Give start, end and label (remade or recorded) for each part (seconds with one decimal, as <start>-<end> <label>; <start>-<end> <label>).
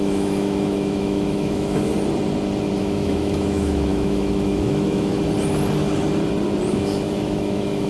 0.0-1.9 remade; 1.9-2.8 recorded; 2.8-5.1 remade; 5.1-6.7 recorded; 6.7-7.9 remade